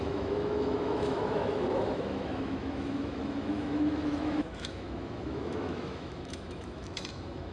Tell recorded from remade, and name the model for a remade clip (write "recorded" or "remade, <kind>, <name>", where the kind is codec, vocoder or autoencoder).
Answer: remade, autoencoder, DAC-VAE